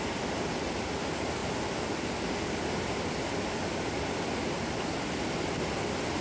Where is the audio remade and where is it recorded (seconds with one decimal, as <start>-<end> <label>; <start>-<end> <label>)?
0.0-6.2 recorded